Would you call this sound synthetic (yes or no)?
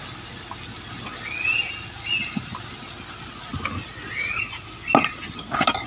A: no